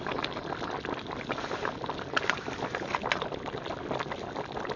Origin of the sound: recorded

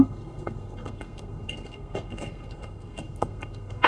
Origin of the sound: remade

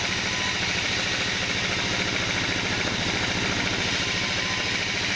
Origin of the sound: recorded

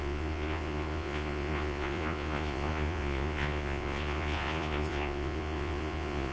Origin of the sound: remade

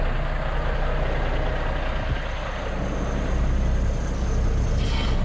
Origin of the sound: recorded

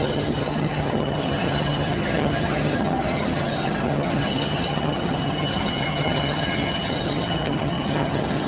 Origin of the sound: remade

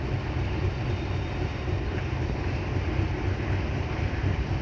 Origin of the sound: recorded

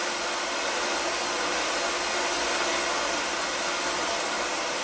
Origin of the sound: recorded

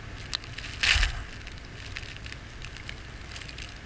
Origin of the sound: recorded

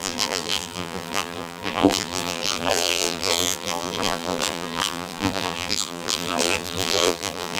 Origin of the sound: remade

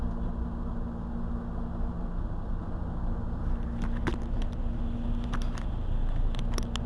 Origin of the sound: recorded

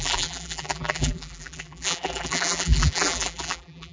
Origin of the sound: remade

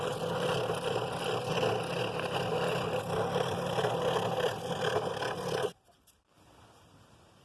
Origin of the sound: recorded